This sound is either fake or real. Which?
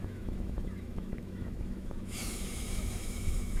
fake